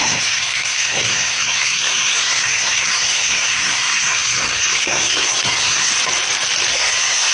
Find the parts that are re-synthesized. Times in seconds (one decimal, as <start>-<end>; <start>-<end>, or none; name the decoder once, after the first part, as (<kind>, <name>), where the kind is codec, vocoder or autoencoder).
0.0-5.9 (codec, SNAC); 6.7-7.3